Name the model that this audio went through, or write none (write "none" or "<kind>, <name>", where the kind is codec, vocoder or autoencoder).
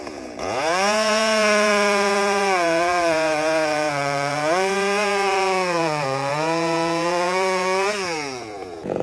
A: vocoder, Vocos